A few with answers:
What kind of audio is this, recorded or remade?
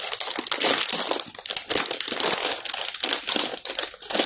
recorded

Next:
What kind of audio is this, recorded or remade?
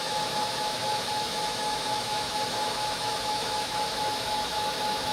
remade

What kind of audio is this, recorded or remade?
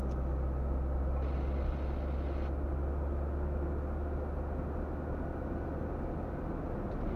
recorded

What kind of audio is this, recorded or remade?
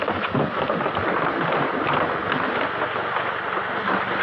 recorded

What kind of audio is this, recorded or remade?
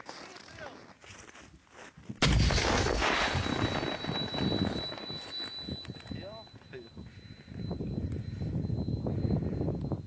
recorded